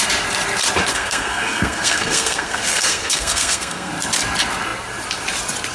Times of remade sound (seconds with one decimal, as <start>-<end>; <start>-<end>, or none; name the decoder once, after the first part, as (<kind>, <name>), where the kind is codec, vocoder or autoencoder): 0.9-3.9 (codec, SNAC)